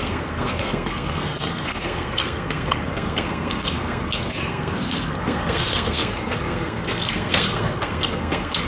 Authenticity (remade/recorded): remade